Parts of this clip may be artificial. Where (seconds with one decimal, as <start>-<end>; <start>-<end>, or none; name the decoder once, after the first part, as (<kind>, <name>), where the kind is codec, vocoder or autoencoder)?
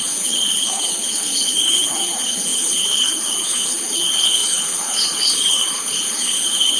0.0-6.8 (codec, HILCodec)